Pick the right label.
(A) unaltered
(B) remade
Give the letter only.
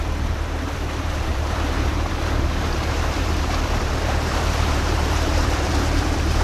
B